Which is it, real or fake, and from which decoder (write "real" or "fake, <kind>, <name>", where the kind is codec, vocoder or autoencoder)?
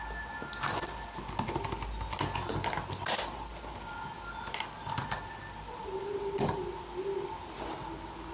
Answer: real